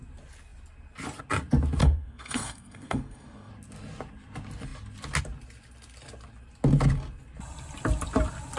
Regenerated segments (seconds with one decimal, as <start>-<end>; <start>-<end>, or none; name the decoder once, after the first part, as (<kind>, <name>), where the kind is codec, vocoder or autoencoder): 1.8-3.5 (codec, SNAC)

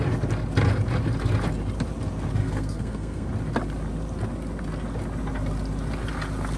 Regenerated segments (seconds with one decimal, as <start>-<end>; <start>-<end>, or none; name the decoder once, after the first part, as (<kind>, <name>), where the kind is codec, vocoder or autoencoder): 2.4-3.3 (codec, SNAC)

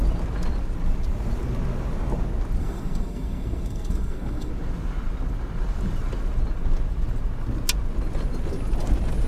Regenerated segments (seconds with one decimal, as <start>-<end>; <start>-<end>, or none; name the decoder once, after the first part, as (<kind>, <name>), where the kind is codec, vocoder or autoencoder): 2.6-4.5 (codec, SNAC)